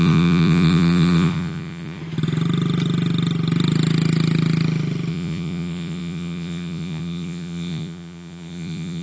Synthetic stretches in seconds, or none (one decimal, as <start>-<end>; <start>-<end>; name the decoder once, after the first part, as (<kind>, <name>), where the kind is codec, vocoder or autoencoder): 0.0-2.0 (vocoder, Vocos); 5.1-9.0

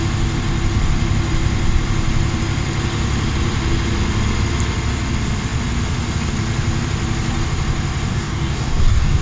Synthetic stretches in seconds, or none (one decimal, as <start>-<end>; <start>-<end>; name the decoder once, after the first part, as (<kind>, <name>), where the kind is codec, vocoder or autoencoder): 8.1-9.2 (codec, DAC)

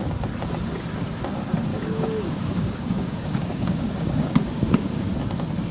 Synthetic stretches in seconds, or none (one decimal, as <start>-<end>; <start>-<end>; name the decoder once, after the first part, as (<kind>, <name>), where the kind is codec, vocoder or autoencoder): 1.7-5.1 (codec, DAC)

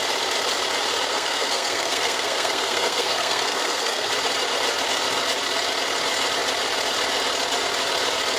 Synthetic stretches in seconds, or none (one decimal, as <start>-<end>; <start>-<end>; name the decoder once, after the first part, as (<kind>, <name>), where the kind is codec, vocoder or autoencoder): 1.1-4.1 (codec, SNAC)

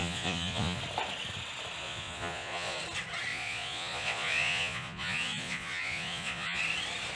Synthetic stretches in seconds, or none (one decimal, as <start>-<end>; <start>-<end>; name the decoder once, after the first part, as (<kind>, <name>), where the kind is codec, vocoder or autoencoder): 0.0-0.8 (vocoder, Vocos); 1.8-2.8; 3.3-6.6